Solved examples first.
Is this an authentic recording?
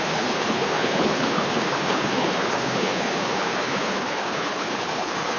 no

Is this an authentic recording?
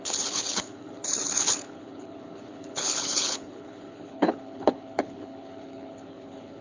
no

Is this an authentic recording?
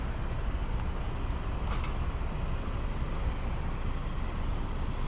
yes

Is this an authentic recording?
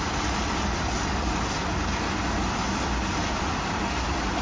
yes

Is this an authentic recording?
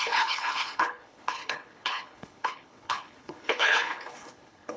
no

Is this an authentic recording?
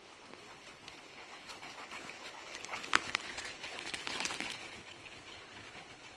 no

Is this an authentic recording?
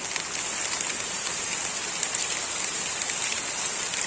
yes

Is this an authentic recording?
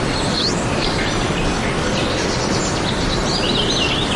yes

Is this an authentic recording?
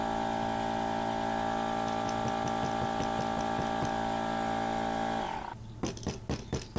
yes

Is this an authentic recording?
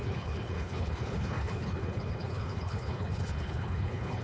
no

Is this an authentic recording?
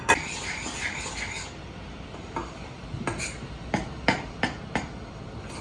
yes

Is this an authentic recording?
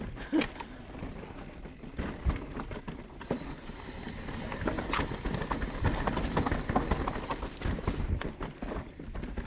yes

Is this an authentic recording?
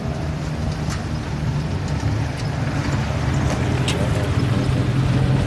yes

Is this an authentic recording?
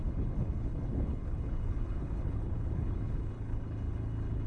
no